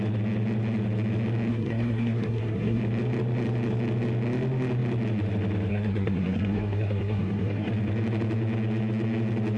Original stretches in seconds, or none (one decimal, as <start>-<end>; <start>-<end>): 0.0-1.5; 2.8-5.7; 7.7-9.6